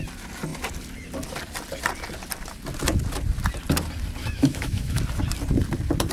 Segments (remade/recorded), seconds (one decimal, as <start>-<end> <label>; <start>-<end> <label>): 0.0-4.2 recorded; 4.2-5.0 remade; 5.0-6.1 recorded